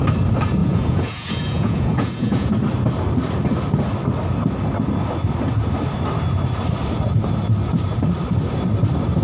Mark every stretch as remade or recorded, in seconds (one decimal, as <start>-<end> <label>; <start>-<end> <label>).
0.0-0.6 recorded; 0.6-2.5 remade; 2.5-9.2 recorded